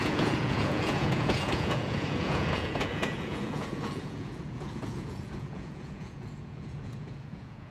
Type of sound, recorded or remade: remade